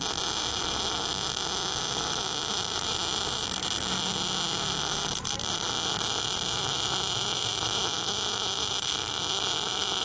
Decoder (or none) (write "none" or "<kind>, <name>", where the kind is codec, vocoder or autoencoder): none